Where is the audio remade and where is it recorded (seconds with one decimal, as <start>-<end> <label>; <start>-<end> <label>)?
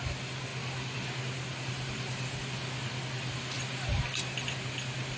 0.0-5.2 recorded